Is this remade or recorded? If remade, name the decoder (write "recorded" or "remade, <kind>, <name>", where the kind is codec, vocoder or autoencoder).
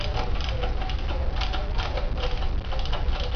recorded